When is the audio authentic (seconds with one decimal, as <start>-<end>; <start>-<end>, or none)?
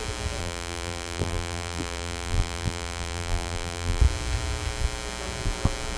0.0-0.4; 4.0-6.0